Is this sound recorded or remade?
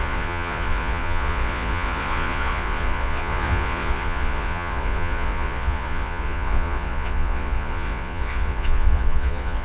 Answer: remade